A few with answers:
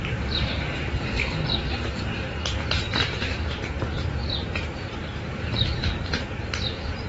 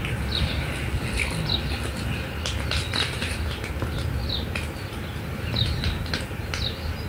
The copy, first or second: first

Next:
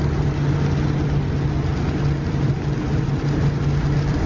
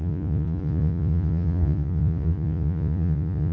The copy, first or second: second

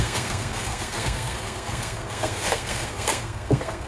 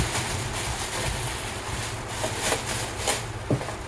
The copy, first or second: first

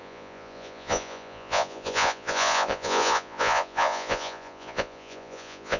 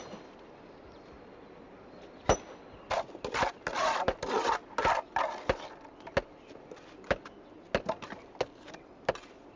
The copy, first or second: first